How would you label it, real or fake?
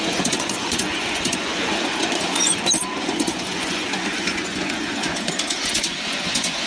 fake